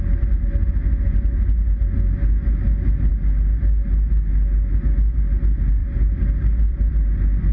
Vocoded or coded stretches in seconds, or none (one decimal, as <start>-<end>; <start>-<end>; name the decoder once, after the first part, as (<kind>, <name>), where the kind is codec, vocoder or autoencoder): 5.8-6.9 (vocoder, BigVGAN v2)